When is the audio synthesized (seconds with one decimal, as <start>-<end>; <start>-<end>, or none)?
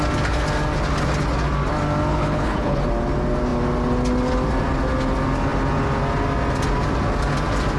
2.1-2.8